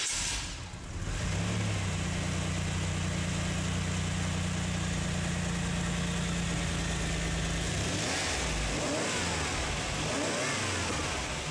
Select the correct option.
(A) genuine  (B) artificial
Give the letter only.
A